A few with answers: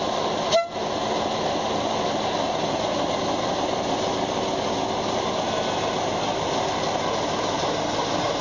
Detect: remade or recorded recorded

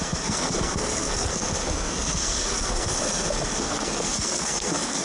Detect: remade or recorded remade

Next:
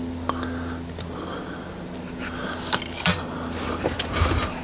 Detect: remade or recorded recorded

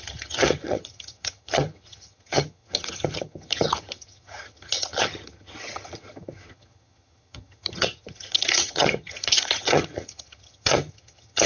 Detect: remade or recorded remade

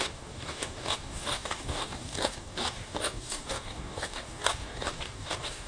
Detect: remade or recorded remade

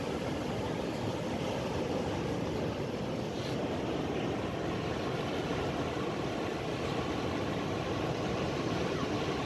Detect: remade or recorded recorded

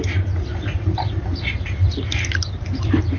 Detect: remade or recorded recorded